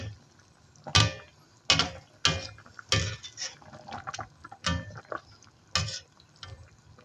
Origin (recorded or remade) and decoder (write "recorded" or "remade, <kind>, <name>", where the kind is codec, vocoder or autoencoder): recorded